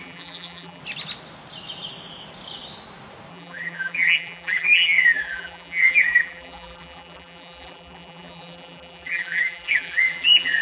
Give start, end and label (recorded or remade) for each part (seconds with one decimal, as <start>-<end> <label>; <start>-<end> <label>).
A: 0.0-0.8 remade; 0.8-3.3 recorded; 3.3-10.6 remade